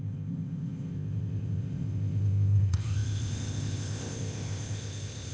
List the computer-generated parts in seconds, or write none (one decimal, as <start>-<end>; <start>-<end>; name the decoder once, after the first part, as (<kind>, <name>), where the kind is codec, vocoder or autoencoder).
0.0-5.3 (codec, ZipCodec)